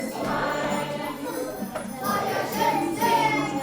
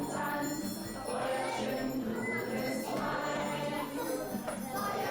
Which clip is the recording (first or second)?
second